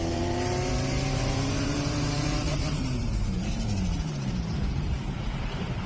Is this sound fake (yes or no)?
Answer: yes